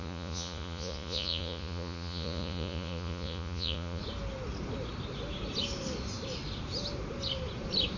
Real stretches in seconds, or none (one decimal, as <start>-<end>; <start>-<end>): 4.0-8.0